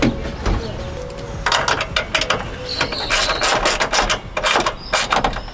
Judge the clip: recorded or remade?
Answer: recorded